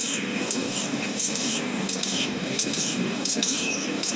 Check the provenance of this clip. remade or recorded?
remade